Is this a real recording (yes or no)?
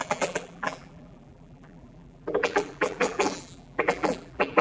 no